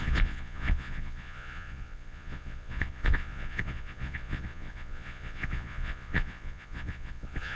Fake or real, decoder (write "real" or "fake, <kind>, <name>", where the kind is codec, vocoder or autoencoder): fake, vocoder, Vocos